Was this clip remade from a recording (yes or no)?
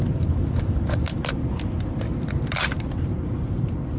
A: no